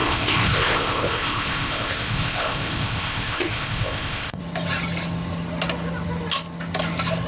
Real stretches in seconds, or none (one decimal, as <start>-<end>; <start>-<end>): 4.4-7.3